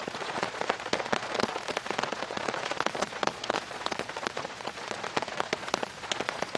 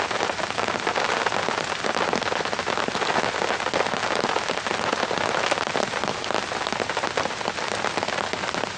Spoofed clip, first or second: first